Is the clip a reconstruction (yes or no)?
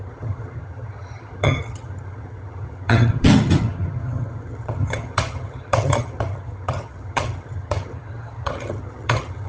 yes